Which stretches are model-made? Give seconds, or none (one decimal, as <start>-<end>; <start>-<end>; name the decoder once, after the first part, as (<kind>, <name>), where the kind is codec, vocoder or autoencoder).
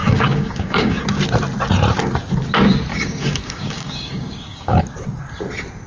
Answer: 0.0-1.0 (codec, DAC); 2.9-4.8